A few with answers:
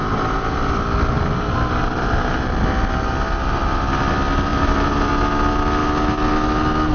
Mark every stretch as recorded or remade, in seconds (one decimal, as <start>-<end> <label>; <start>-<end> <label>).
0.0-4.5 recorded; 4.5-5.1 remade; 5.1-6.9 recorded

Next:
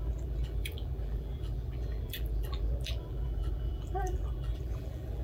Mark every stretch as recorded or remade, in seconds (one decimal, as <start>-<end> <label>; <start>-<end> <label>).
0.0-5.2 remade

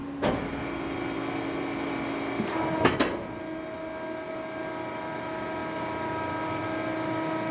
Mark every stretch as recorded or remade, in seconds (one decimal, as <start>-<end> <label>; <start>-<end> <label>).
0.0-7.5 recorded

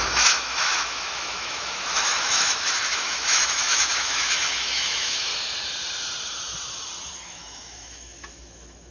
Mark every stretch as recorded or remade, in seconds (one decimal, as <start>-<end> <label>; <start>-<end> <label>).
0.0-5.3 remade; 5.3-7.2 recorded; 7.2-8.9 remade

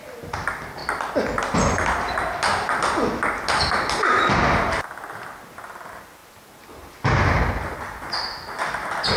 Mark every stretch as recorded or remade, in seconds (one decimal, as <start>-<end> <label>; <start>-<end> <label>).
0.0-9.2 recorded

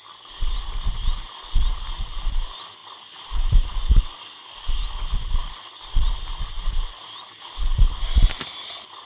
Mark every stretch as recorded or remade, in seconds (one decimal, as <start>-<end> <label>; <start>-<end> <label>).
0.0-9.0 recorded

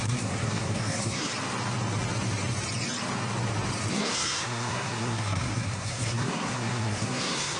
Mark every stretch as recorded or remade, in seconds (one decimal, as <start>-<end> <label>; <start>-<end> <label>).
0.0-1.3 remade; 1.3-3.9 recorded; 3.9-7.6 remade